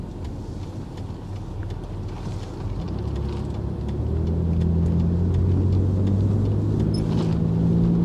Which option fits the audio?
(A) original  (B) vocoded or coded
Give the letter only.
A